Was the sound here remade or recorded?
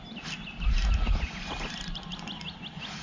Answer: recorded